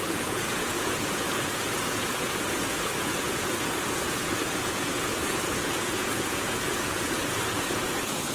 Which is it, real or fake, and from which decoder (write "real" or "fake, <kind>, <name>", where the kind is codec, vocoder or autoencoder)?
fake, vocoder, Vocos